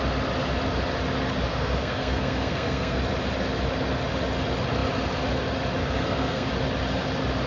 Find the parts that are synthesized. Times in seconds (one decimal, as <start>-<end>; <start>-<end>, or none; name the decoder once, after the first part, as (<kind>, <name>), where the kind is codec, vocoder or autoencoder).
1.5-3.0 (codec, SNAC); 5.8-6.5